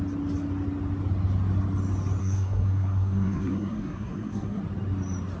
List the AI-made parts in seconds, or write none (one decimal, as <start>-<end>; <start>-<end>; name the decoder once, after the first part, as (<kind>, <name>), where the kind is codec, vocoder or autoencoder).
2.2-4.6 (codec, SNAC)